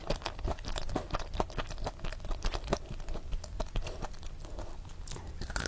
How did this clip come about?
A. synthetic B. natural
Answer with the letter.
B